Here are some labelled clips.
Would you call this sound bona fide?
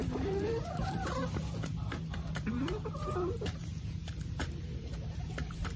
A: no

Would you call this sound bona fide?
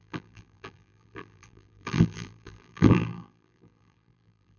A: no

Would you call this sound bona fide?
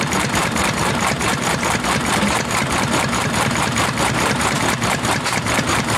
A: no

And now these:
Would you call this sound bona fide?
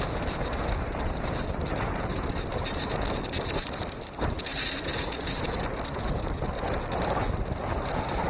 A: no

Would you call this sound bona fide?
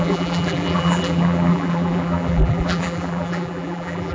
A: no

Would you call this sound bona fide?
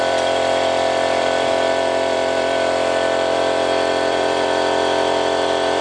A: no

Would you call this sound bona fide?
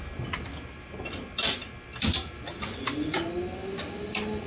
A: yes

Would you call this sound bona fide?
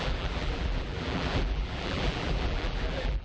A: no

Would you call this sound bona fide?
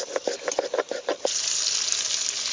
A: yes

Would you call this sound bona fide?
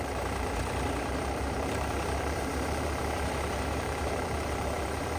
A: no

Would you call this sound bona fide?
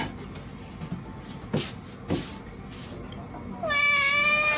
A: yes